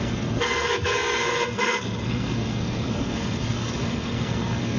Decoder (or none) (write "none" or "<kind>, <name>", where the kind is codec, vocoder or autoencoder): codec, SNAC